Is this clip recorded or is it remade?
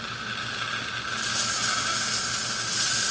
recorded